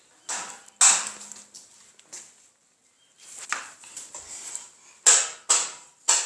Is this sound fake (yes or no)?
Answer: no